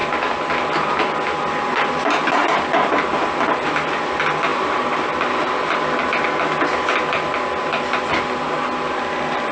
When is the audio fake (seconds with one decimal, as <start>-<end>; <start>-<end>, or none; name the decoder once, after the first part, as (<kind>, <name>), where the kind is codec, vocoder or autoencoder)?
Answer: none